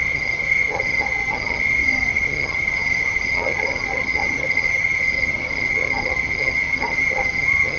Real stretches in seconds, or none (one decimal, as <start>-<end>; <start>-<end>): none